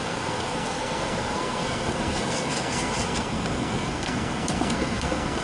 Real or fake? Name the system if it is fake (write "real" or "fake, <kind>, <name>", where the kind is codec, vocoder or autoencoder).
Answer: fake, codec, SNAC